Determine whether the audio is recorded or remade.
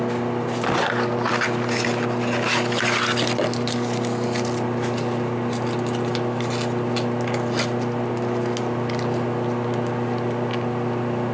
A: recorded